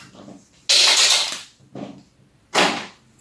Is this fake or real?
real